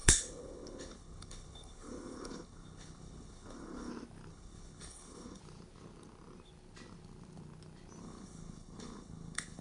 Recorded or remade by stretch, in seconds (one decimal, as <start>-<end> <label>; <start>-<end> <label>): 0.0-3.9 remade; 3.9-4.3 recorded; 4.3-5.4 remade; 5.4-8.0 recorded; 8.0-9.6 remade